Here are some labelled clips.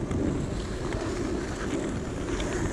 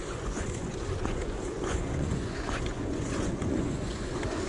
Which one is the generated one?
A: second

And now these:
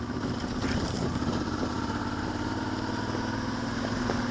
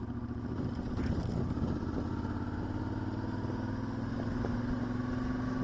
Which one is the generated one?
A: first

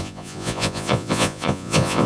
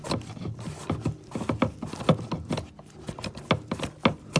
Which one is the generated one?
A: first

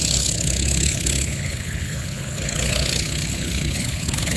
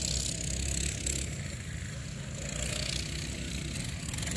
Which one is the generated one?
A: first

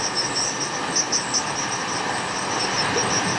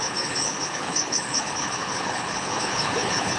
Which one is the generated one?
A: second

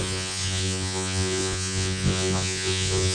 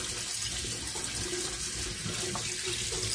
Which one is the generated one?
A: first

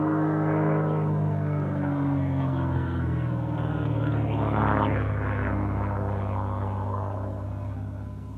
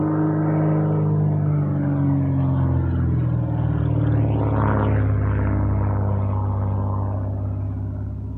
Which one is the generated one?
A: first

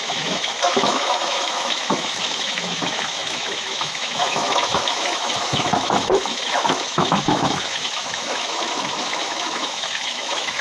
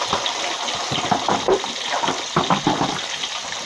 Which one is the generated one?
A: first